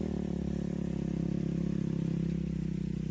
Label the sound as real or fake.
real